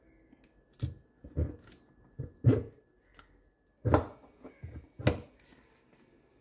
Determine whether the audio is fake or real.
real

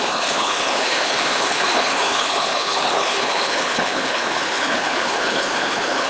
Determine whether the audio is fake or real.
fake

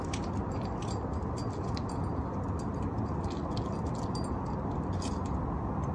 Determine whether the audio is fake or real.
real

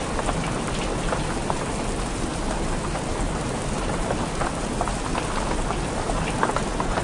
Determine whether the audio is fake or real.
real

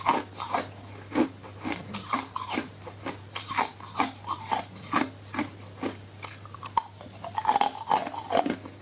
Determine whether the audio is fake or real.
real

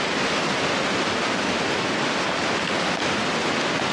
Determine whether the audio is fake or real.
fake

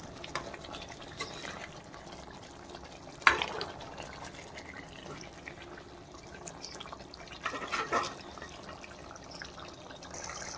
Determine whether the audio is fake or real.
fake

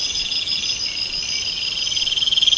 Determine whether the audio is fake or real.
real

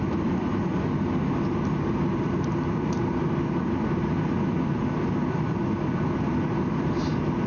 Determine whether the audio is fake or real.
real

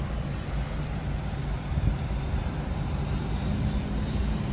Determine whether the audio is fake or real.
fake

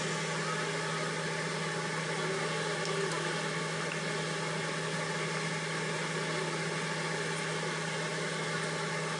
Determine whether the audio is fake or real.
real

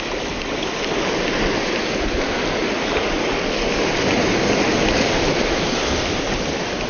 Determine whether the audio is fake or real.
real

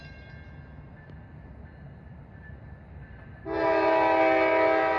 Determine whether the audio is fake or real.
real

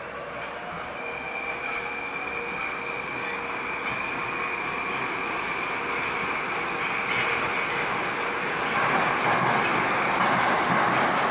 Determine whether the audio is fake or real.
real